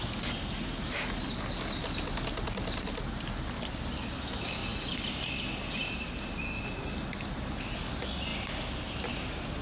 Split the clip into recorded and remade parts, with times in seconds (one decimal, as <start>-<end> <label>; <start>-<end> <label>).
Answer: 0.0-9.6 recorded